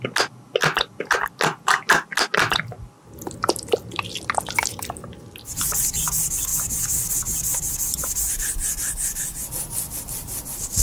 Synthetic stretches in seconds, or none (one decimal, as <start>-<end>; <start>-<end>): none

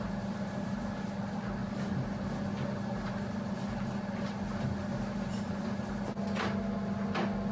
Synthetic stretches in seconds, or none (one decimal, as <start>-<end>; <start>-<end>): none

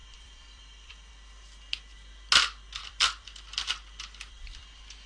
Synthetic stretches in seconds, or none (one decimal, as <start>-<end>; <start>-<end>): 0.0-1.1; 2.8-4.6

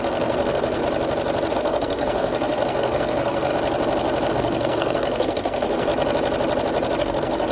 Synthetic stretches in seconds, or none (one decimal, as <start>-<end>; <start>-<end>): 0.0-0.8; 1.5-3.5; 4.3-5.9; 7.0-7.5

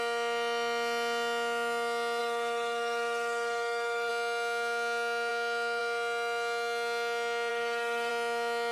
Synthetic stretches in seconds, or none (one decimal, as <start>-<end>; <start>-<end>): 2.2-4.1; 7.5-8.1

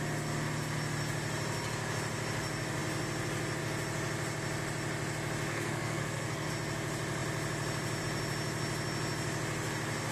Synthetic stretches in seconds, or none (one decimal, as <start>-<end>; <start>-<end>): 5.5-6.5